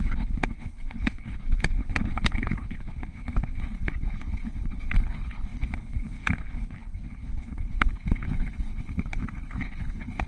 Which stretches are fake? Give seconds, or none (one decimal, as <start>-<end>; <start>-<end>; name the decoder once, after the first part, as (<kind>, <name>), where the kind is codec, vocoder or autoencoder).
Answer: 0.0-10.3 (codec, HILCodec)